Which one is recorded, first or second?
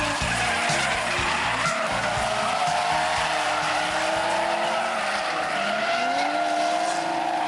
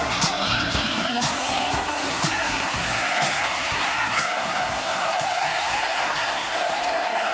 first